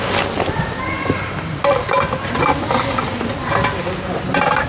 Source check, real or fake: real